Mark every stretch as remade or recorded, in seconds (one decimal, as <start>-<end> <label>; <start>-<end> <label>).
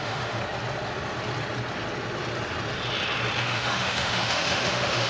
0.0-0.4 remade; 0.4-3.4 recorded; 3.4-5.1 remade